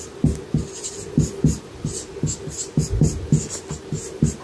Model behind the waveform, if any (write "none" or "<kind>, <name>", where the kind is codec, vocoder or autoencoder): none